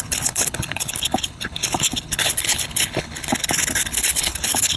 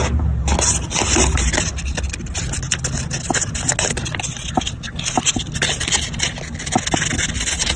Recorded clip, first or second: second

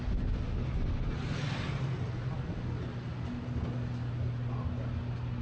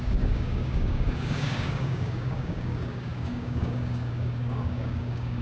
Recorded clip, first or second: first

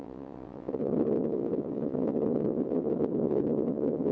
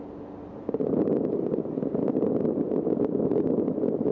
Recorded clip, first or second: second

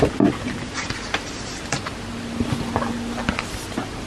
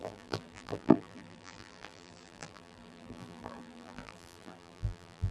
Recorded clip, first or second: first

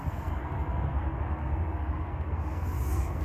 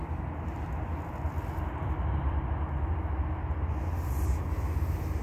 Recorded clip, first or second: second